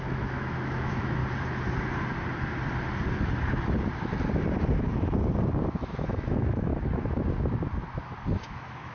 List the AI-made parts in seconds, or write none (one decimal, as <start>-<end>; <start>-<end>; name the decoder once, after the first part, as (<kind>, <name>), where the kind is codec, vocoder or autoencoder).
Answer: 0.0-1.2 (autoencoder, DAC-VAE); 5.6-6.7; 8.4-8.9